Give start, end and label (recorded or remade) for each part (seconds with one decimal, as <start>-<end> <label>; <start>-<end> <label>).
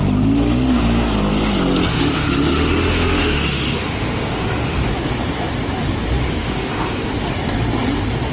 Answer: 0.0-1.9 recorded; 1.9-4.9 remade; 4.9-6.4 recorded; 6.4-7.1 remade; 7.1-8.3 recorded